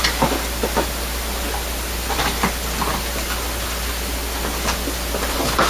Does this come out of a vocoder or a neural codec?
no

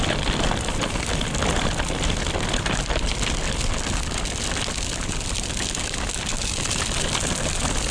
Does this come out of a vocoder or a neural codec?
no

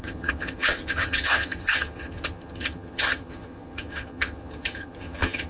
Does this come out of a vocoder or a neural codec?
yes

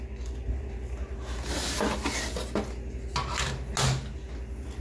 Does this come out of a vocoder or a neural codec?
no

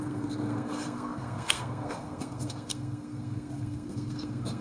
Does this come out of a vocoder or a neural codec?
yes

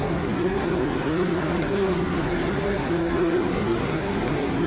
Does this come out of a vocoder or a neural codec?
yes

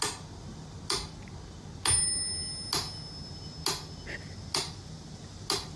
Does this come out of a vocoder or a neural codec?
no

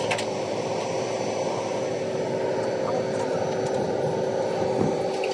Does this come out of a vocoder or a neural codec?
no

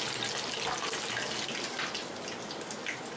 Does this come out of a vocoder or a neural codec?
no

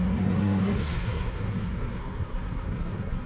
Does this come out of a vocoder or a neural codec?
yes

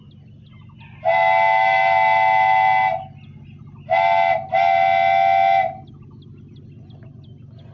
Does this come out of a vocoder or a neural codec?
no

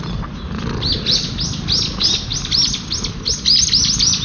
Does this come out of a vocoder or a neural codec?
no